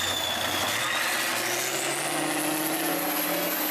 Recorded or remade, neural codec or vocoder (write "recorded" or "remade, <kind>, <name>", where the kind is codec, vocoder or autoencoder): recorded